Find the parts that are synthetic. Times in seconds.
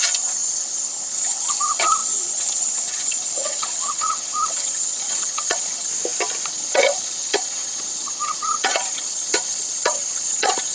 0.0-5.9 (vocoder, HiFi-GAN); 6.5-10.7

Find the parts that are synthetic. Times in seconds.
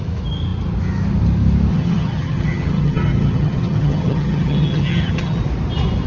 1.7-5.4 (vocoder, HiFi-GAN)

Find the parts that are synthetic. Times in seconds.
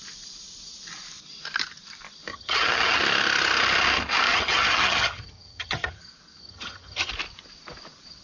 2.3-3.0 (vocoder, HiFi-GAN); 4.3-6.0; 6.4-7.1